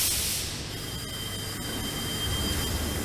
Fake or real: real